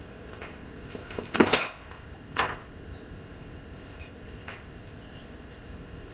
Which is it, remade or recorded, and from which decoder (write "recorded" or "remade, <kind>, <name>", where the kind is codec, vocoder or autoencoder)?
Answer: remade, codec, ZipCodec